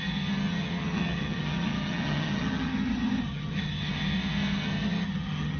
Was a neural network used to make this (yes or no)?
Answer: yes